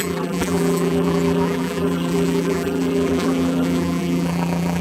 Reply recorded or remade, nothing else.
remade